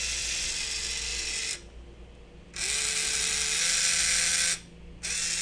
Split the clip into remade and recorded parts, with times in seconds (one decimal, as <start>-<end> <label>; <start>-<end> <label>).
0.0-5.4 recorded